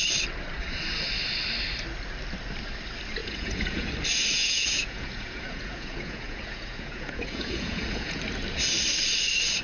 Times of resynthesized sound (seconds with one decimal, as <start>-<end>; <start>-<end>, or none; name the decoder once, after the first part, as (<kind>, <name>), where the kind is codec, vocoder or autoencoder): 3.2-3.9 (vocoder, Vocos); 4.3-8.2